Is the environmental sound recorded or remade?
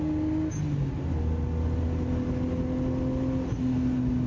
recorded